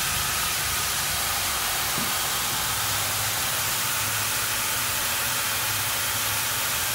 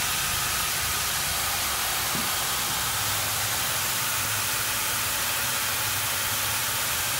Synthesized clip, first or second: second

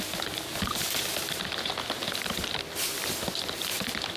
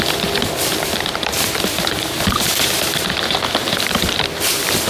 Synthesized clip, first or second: second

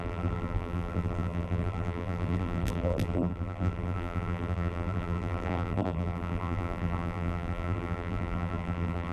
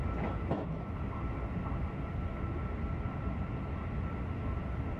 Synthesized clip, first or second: first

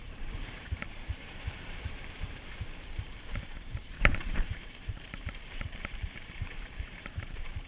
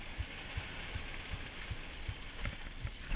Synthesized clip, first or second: first